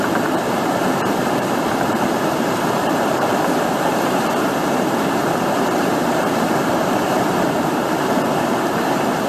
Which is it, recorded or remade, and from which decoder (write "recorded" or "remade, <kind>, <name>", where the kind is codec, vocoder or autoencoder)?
remade, vocoder, BigVGAN v2